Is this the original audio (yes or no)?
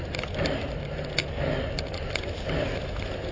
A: yes